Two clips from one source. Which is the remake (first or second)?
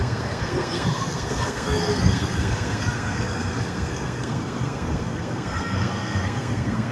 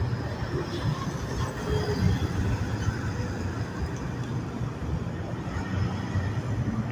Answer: first